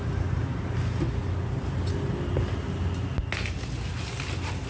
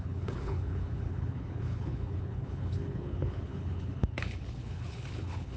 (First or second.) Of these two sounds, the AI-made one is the second